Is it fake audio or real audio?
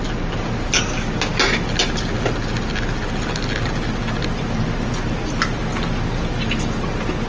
real